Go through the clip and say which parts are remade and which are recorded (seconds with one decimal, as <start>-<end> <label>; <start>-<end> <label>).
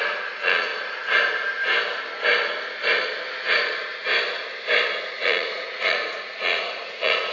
0.0-0.7 remade; 0.7-5.1 recorded; 5.1-7.3 remade